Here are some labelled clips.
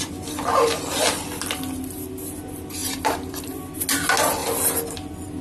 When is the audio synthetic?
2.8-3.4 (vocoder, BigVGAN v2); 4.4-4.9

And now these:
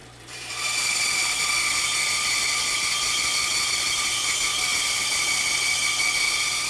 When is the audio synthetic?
0.0-4.0 (vocoder, BigVGAN v2); 4.7-5.6